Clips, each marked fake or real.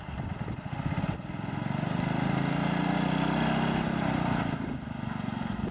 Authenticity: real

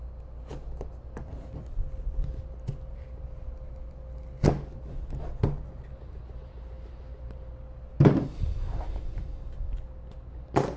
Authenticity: real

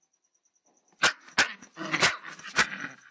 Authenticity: real